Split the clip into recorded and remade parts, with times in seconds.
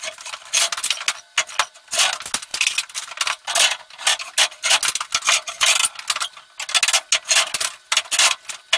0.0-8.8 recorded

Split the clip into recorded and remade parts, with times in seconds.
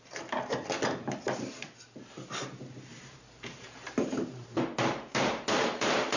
0.0-2.9 recorded; 2.9-6.2 remade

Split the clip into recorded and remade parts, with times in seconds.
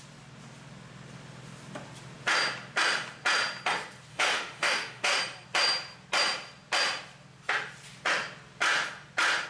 0.0-4.1 recorded; 4.1-5.2 remade; 5.2-9.5 recorded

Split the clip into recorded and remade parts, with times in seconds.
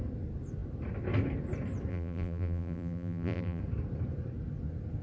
0.0-1.9 recorded; 1.9-3.6 remade; 3.6-5.0 recorded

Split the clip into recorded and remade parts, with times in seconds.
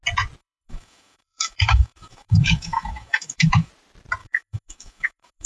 0.0-0.4 recorded; 0.4-3.7 remade; 3.7-4.2 recorded; 4.2-5.5 remade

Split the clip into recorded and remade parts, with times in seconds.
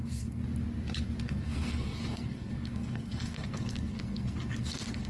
0.0-0.4 remade; 0.4-1.2 recorded; 1.2-5.1 remade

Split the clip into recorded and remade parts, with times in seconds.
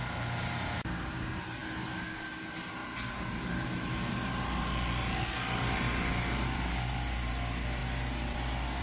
0.0-8.8 recorded